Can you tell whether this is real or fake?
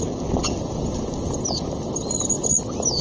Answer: real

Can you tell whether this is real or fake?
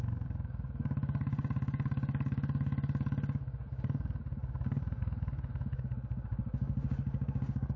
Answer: fake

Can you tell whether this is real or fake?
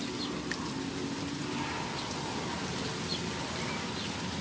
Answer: real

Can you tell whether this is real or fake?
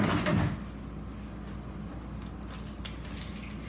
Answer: real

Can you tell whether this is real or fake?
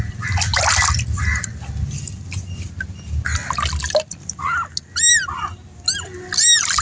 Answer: real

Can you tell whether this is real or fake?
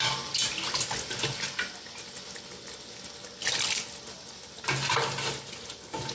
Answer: real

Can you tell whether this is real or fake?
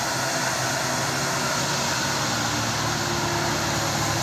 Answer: real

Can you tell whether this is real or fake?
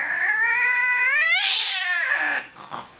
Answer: fake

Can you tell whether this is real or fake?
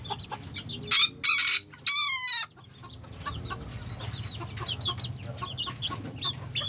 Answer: real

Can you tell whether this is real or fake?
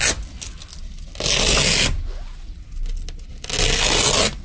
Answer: real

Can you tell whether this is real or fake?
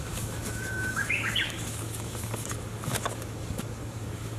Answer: fake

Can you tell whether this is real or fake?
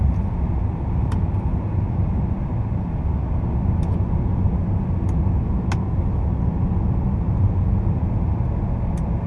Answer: real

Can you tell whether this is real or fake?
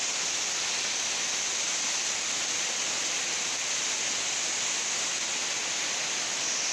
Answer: real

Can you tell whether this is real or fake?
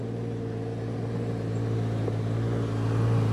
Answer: real